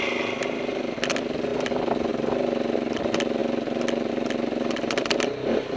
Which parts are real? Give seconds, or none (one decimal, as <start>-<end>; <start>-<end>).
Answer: 0.0-5.8